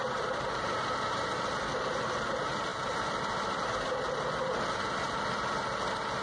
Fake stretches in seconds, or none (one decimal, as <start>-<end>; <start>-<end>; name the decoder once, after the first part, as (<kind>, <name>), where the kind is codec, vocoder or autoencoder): none